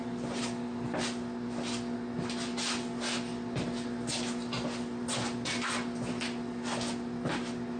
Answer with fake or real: real